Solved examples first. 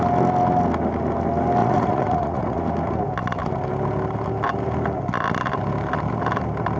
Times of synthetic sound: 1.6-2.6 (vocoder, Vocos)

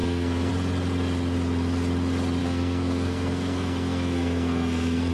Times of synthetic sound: 0.0-0.5 (codec, SNAC); 2.4-5.1

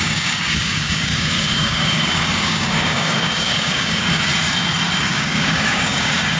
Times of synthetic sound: 0.0-4.3 (codec, DAC); 5.0-6.4

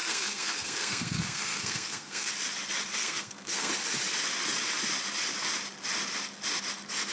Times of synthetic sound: 0.0-2.3 (codec, SNAC); 3.0-3.7